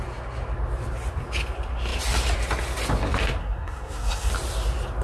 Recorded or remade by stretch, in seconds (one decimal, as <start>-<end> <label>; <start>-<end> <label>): 0.0-3.4 recorded; 3.4-4.3 remade; 4.3-5.0 recorded